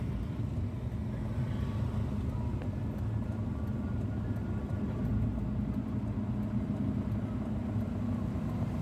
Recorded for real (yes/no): yes